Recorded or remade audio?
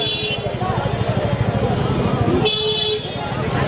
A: recorded